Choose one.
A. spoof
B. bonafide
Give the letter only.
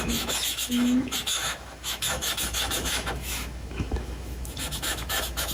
A